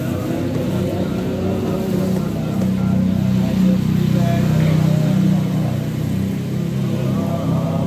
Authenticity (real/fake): real